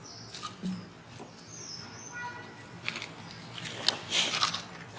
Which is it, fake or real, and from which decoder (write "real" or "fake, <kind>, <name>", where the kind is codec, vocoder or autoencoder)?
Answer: real